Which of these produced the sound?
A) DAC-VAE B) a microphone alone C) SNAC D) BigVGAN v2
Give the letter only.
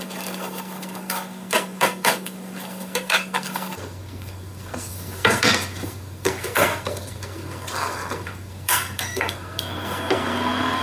C